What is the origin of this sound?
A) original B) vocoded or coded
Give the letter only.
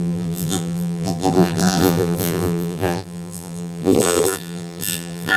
B